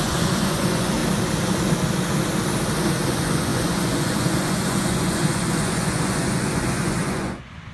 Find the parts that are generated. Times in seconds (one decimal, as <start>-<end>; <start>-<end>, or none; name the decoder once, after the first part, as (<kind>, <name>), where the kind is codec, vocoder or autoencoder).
0.0-1.0 (vocoder, Vocos); 3.1-7.7